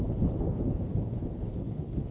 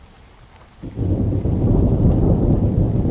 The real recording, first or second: second